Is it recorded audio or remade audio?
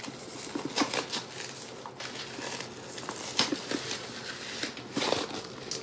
recorded